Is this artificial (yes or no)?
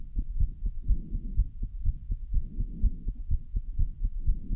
no